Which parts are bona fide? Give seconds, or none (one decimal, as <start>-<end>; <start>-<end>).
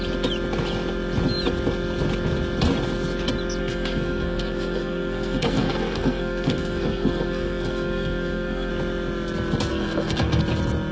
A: 0.0-3.6; 8.7-9.7; 10.4-10.9